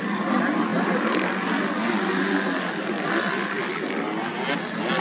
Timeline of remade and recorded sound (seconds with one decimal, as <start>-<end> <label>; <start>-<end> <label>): 0.0-5.0 recorded